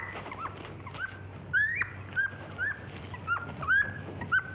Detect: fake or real real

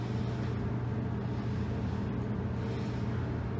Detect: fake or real real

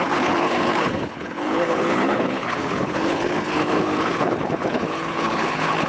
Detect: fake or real fake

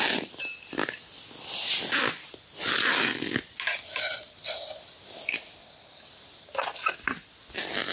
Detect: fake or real real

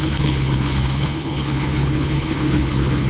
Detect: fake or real fake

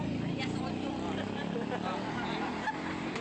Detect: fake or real real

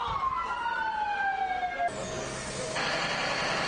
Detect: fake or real real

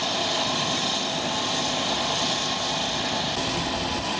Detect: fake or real real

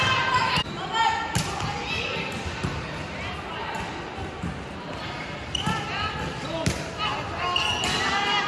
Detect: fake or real real